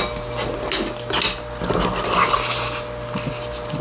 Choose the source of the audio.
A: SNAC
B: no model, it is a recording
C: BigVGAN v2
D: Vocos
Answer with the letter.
B